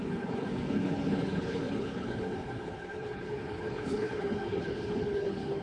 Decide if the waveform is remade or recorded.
remade